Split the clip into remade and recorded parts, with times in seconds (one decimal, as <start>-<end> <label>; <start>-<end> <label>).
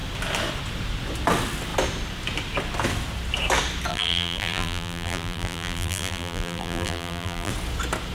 0.0-3.9 recorded; 3.9-7.5 remade; 7.5-8.1 recorded